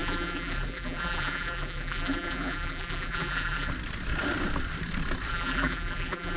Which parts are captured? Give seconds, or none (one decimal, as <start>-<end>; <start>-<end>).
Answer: 3.7-5.3